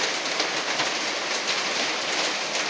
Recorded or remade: recorded